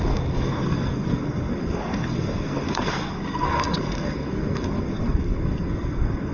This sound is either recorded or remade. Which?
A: remade